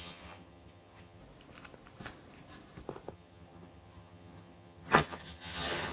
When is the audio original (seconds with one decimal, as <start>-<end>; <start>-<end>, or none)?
1.2-3.1